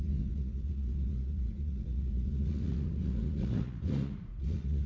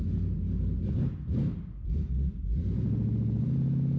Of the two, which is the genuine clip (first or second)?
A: second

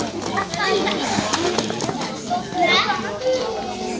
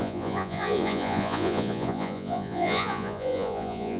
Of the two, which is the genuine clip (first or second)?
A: first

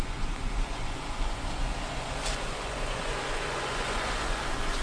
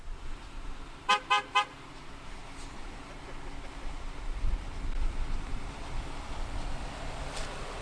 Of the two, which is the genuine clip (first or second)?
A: second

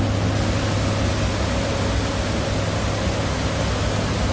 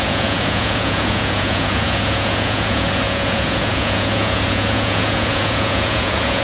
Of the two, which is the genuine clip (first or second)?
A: first